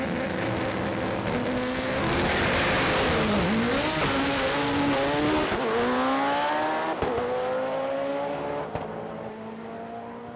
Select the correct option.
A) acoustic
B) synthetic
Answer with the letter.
A